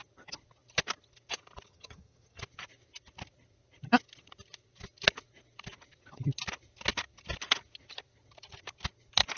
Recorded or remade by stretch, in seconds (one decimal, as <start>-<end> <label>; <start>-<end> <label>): 0.0-1.7 recorded; 1.7-2.4 remade; 2.4-9.4 recorded